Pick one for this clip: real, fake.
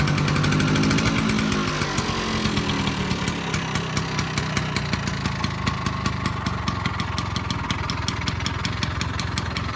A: real